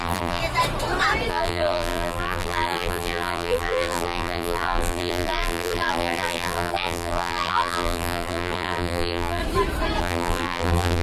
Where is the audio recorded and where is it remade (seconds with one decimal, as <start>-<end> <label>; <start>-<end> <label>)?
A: 0.0-0.4 remade; 0.4-1.3 recorded; 1.3-9.4 remade; 9.4-10.0 recorded; 10.0-11.0 remade